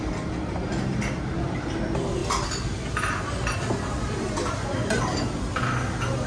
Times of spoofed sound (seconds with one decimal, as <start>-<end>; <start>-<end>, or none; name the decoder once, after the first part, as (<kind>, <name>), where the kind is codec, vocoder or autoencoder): none